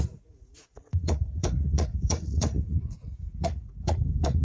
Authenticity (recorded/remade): remade